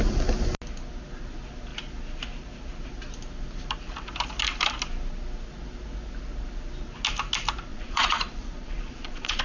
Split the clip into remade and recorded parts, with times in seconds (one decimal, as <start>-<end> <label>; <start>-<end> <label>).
0.0-7.7 recorded; 7.7-9.4 remade